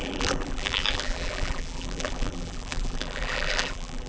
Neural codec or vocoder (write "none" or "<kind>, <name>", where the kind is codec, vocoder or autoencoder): vocoder, BigVGAN v2